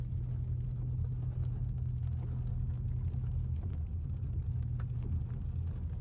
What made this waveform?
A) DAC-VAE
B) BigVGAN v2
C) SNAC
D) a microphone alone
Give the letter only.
D